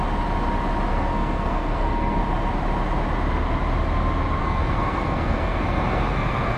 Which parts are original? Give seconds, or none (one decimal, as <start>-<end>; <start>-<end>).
0.0-0.9; 2.2-4.4